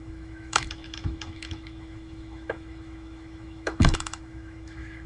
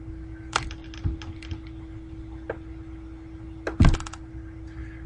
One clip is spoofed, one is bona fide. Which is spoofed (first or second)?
first